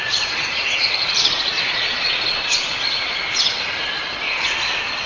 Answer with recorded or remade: remade